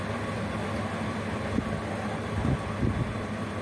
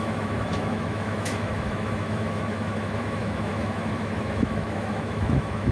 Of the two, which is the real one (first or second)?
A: first